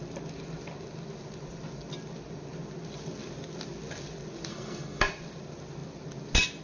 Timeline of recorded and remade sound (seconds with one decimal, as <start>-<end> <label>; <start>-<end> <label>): 0.0-4.5 recorded; 4.5-5.0 remade; 5.0-6.6 recorded